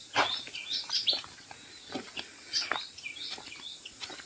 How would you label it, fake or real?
real